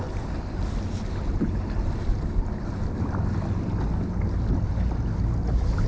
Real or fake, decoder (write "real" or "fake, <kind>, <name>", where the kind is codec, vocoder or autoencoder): real